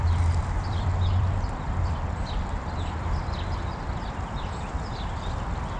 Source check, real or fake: fake